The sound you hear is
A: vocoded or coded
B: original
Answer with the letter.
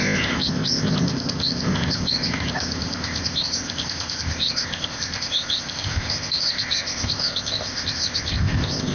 A